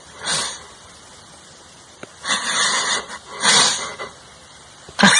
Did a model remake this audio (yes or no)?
no